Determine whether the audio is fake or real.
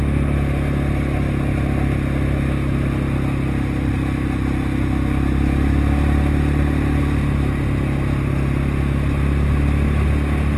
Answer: real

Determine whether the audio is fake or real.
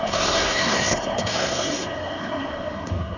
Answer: fake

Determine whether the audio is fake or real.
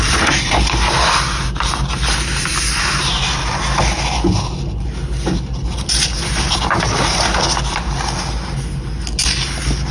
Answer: real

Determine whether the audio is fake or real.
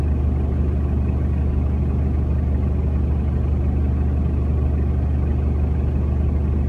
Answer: real